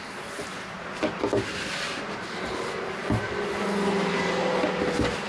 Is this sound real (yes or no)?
yes